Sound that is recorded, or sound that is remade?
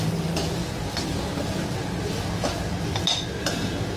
recorded